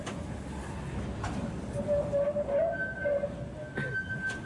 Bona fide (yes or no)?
yes